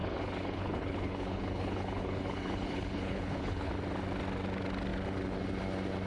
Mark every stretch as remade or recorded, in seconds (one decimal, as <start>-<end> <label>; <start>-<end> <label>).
0.0-3.7 remade; 3.7-6.1 recorded